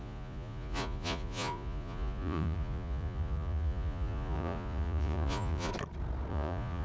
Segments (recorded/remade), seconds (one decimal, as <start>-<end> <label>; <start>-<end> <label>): 0.0-5.7 remade; 5.7-6.3 recorded; 6.3-6.8 remade